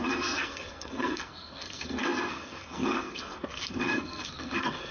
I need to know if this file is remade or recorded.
remade